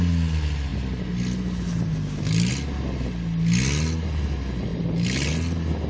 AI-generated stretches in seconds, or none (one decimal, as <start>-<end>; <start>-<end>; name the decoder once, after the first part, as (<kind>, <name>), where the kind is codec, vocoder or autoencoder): none